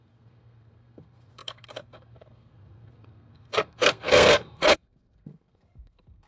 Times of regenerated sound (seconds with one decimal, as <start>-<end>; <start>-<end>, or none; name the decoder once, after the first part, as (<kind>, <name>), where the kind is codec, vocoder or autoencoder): 0.0-6.3 (codec, SNAC)